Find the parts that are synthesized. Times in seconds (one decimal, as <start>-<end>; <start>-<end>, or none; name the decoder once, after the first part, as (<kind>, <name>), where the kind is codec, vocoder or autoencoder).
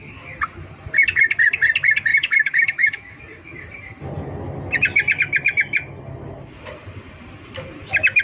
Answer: 2.1-3.2 (autoencoder, DAC-VAE)